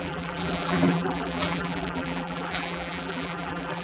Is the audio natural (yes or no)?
no